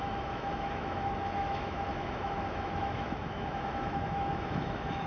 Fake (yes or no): yes